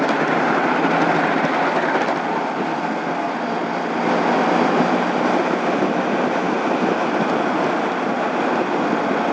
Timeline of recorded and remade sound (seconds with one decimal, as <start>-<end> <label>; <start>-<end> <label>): 0.0-2.7 recorded; 2.7-3.3 remade; 3.3-9.3 recorded

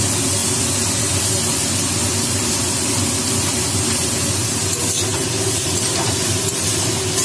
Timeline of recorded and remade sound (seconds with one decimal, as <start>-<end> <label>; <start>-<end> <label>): 0.0-5.1 recorded; 5.1-6.7 remade; 6.7-7.2 recorded

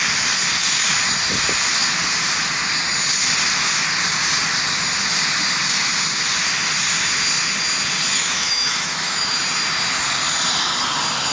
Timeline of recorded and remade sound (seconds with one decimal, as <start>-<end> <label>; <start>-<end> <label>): 0.0-8.1 recorded; 8.1-9.4 remade; 9.4-11.3 recorded

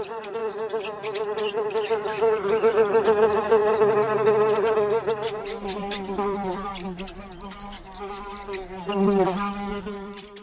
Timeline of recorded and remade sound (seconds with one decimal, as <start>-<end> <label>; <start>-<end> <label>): 0.0-0.4 remade; 0.4-1.4 recorded; 1.4-3.6 remade; 3.6-5.1 recorded; 5.1-6.7 remade; 6.7-9.9 recorded; 9.9-10.4 remade

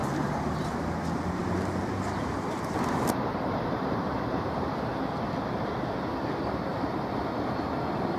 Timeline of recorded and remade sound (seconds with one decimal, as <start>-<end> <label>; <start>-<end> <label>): 0.0-0.8 remade; 0.8-1.4 recorded; 1.4-5.1 remade; 5.1-6.7 recorded; 6.7-7.7 remade; 7.7-8.2 recorded

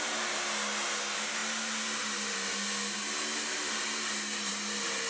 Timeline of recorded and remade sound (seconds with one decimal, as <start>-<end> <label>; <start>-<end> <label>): 0.0-5.1 recorded